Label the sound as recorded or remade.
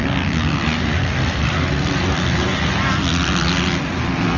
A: recorded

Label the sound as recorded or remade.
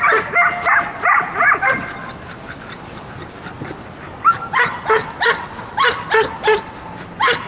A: recorded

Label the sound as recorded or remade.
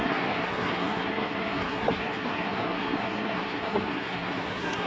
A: remade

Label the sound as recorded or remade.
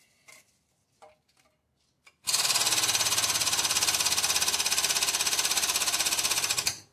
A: recorded